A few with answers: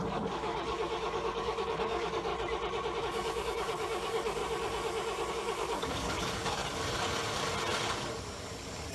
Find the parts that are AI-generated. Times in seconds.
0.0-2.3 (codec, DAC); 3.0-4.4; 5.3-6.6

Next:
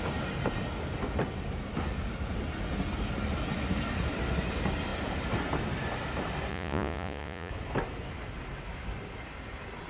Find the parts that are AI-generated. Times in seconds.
6.5-7.5 (vocoder, Vocos)

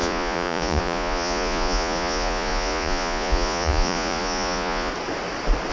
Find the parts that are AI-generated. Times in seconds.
0.0-4.9 (vocoder, Vocos)

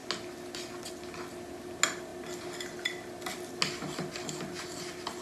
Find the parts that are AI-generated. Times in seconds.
none

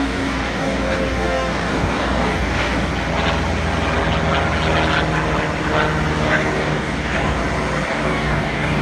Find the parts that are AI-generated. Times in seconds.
0.0-2.9 (codec, DAC); 6.1-7.4; 7.9-8.8

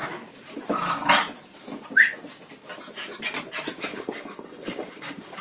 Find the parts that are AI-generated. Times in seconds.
3.9-5.4 (codec, DAC)

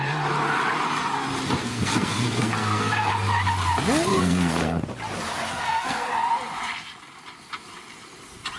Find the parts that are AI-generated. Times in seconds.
1.6-3.1 (codec, SNAC); 4.1-4.8; 5.5-6.1

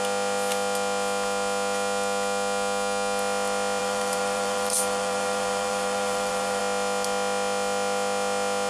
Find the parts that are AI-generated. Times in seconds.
3.8-6.6 (vocoder, BigVGAN v2)